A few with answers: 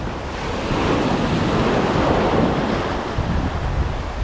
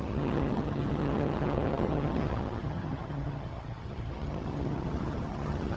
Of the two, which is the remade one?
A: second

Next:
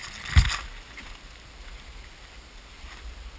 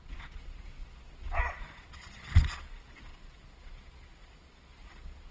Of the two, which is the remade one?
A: second